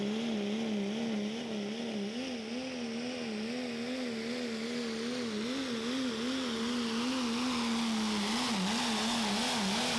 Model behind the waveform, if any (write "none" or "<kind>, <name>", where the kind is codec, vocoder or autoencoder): none